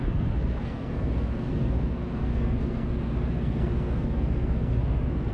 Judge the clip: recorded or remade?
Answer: remade